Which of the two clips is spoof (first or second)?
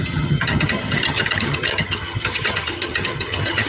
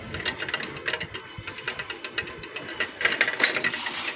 first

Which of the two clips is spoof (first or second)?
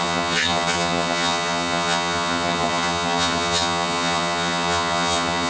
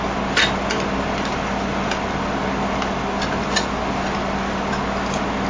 first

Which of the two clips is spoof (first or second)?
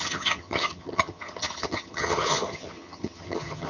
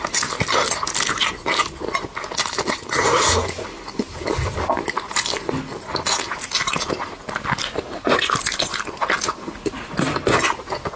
first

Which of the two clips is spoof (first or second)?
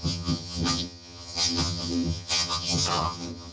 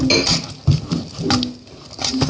first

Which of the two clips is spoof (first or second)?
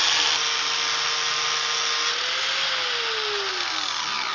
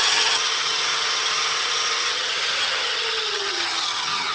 second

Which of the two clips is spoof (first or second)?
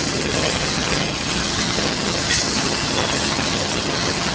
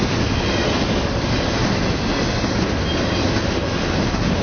first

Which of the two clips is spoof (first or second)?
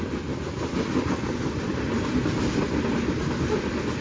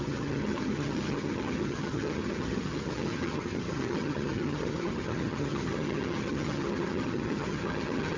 second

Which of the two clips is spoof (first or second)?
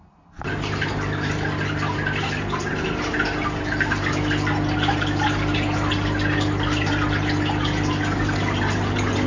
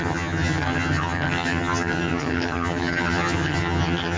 second